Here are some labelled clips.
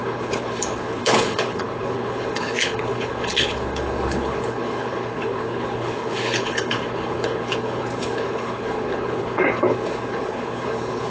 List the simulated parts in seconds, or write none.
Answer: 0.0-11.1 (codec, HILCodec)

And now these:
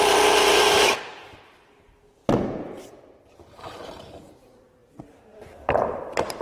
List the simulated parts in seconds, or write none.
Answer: 0.0-2.2 (vocoder, BigVGAN v2); 2.8-6.4

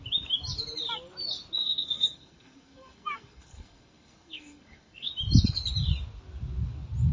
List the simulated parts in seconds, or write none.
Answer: 1.6-5.1 (codec, SNAC)